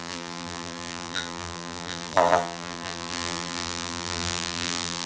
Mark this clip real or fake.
fake